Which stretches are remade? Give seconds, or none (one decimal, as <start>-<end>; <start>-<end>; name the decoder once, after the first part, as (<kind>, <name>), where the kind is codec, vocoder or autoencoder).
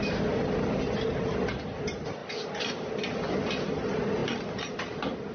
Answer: none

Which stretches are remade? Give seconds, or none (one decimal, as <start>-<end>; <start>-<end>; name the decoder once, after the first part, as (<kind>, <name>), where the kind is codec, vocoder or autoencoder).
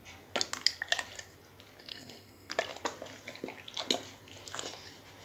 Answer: 1.9-2.5 (codec, SNAC)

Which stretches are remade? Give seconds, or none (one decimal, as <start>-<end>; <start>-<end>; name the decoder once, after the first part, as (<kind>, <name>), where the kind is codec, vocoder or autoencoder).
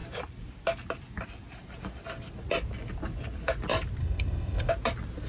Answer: 4.0-4.7 (codec, SNAC)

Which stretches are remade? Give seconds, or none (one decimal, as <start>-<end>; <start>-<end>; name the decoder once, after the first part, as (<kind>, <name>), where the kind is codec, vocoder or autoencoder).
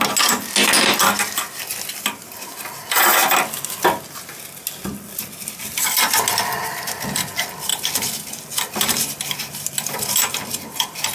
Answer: none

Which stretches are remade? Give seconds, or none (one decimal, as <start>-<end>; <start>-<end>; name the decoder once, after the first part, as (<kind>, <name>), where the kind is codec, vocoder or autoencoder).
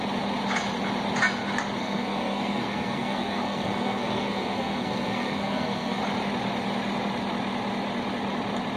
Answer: 1.8-6.0 (codec, SNAC)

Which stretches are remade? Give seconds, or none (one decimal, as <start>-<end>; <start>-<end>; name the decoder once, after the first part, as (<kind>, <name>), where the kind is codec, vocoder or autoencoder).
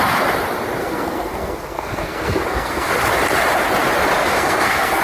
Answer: 0.8-2.9 (codec, SNAC); 4.2-5.0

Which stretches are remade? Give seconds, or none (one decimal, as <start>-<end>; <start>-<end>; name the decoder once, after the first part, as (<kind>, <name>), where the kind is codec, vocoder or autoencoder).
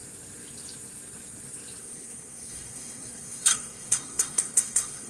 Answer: 1.8-5.1 (codec, SNAC)